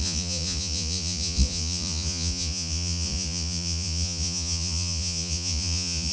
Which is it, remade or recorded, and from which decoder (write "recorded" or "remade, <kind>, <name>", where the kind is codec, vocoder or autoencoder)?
remade, vocoder, Vocos